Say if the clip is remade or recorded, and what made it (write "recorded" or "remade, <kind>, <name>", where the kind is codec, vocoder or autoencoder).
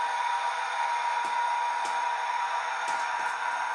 recorded